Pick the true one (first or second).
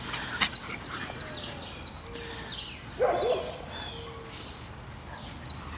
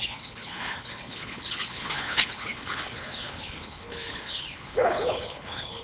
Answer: first